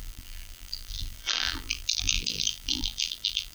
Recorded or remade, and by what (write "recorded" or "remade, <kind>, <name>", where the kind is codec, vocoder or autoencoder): remade, vocoder, BigVGAN v2